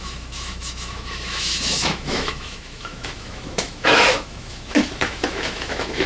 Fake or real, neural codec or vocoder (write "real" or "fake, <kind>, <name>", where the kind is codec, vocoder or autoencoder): fake, autoencoder, DAC-VAE